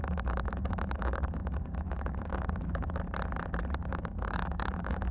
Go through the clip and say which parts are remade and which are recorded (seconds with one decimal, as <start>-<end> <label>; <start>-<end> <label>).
0.0-3.0 remade; 3.0-3.9 recorded; 3.9-5.1 remade